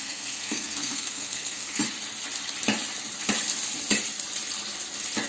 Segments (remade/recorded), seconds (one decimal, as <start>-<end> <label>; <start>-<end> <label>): 0.0-1.8 remade; 1.8-5.3 recorded